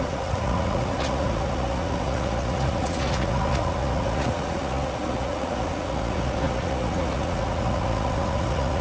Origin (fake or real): fake